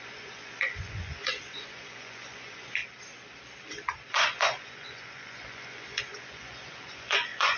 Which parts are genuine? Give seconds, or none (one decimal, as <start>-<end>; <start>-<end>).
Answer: 2.8-4.1